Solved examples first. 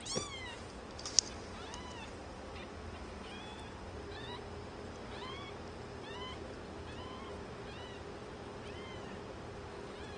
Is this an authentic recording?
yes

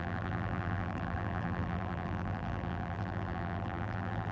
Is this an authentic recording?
no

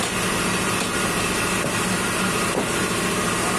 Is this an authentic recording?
yes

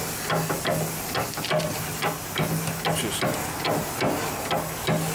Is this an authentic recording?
yes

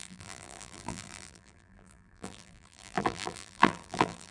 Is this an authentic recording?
no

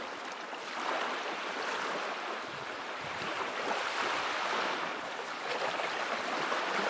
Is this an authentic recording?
yes